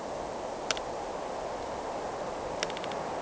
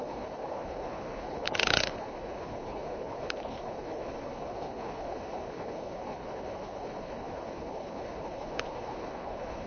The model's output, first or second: second